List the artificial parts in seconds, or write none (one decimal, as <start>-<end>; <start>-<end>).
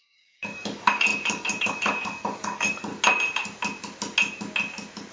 0.0-2.9